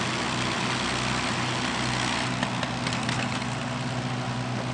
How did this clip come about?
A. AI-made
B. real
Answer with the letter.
B